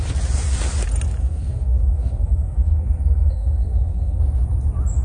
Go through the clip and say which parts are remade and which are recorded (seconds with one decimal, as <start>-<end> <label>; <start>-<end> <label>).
0.0-1.2 recorded; 1.2-4.2 remade; 4.2-5.0 recorded